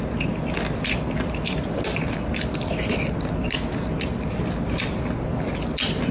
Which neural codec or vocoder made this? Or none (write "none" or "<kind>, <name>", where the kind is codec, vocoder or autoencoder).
none